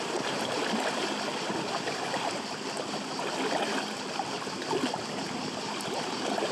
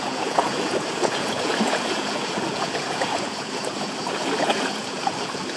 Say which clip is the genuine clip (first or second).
first